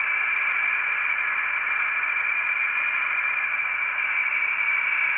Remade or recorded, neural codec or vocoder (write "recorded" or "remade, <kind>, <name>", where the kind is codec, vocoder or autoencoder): recorded